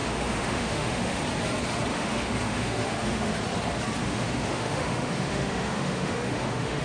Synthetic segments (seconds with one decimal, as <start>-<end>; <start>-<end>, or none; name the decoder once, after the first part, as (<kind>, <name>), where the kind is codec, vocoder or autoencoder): 0.0-1.2 (autoencoder, DAC-VAE); 1.9-3.4; 4.0-6.8